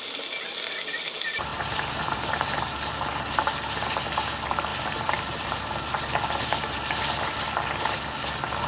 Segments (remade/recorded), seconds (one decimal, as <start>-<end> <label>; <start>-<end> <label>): 0.0-1.5 recorded; 1.5-2.9 remade; 2.9-4.7 recorded; 4.7-7.4 remade; 7.4-8.7 recorded